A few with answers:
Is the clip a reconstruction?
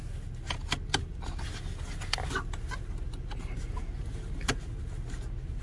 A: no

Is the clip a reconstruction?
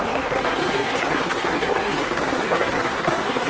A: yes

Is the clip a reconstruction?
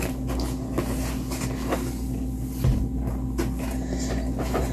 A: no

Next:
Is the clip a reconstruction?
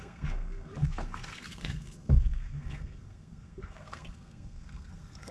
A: yes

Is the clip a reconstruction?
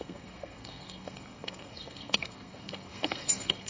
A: yes